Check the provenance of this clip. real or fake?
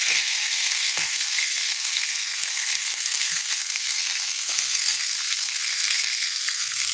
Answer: fake